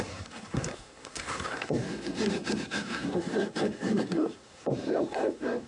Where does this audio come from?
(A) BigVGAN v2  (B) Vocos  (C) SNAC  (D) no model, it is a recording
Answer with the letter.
C